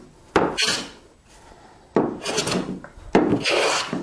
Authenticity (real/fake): real